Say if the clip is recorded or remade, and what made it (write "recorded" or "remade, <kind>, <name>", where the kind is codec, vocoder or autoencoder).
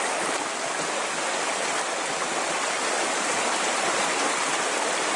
recorded